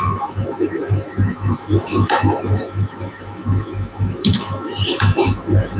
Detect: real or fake fake